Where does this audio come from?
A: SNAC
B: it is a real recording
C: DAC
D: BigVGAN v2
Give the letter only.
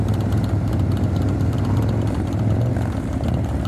D